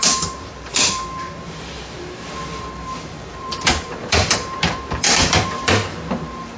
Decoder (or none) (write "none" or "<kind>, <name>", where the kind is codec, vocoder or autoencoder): vocoder, BigVGAN v2